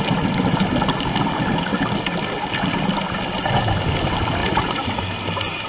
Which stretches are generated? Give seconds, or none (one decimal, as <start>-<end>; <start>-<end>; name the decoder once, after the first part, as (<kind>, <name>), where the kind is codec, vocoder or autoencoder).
4.4-5.0 (vocoder, Vocos)